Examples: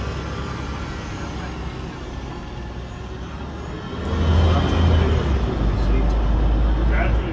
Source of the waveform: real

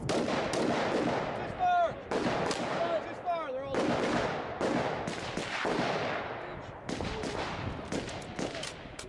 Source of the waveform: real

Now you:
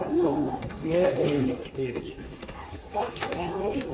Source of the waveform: fake